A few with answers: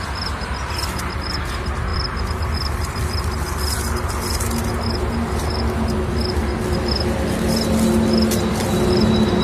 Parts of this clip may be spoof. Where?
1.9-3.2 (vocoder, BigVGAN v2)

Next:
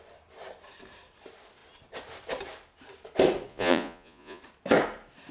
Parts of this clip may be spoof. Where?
3.5-4.4 (vocoder, Vocos)

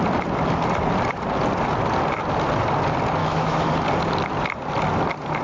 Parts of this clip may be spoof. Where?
3.2-3.7 (autoencoder, DAC-VAE)

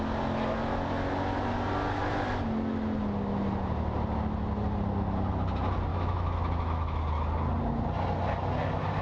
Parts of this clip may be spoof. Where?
5.9-7.0 (autoencoder, DAC-VAE)